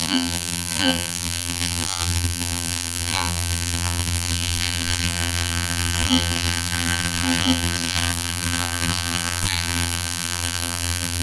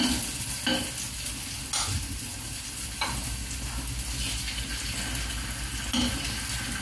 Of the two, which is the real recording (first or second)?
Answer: second